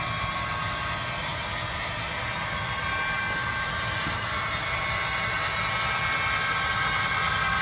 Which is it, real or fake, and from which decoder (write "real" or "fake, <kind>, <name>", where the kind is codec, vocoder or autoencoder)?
real